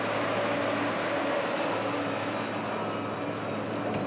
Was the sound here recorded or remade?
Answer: recorded